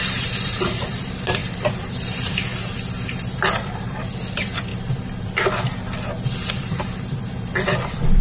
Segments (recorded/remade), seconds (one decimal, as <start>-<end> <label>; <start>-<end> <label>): 0.0-4.7 remade; 4.7-6.5 recorded; 6.5-8.2 remade